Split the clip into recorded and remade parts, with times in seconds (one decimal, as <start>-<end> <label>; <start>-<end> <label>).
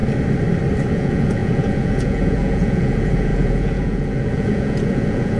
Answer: 0.0-0.9 recorded; 0.9-5.4 remade